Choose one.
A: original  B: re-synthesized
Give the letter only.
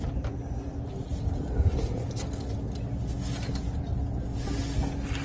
A